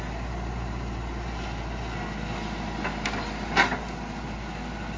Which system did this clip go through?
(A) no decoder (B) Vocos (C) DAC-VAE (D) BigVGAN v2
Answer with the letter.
A